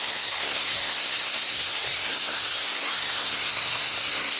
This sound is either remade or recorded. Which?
remade